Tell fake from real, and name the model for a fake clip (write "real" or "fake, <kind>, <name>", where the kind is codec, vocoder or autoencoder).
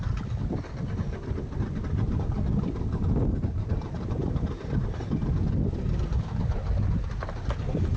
real